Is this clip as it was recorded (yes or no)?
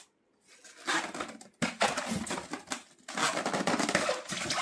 yes